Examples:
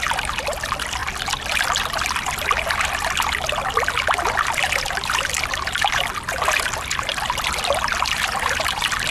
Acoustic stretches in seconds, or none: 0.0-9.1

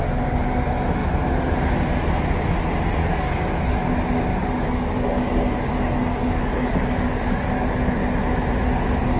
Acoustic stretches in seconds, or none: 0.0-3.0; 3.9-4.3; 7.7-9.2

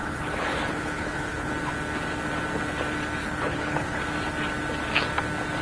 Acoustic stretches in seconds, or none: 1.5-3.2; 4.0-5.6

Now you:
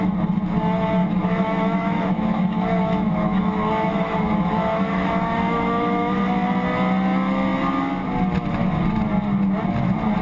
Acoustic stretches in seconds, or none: 0.0-1.0; 6.2-10.2

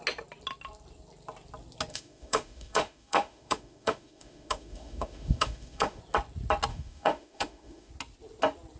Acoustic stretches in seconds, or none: 0.0-1.9; 6.0-6.7; 7.9-8.8